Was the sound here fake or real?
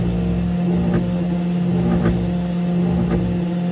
real